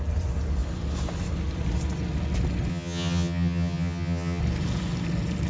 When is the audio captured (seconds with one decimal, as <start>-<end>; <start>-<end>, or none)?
0.0-2.7; 4.4-5.5